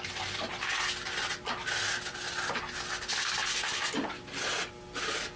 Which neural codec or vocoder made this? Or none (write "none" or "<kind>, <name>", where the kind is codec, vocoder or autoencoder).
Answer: none